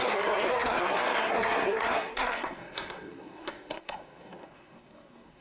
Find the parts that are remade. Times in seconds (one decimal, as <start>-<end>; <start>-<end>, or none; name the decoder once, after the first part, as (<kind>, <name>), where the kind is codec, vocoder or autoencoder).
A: 0.0-5.4 (codec, SNAC)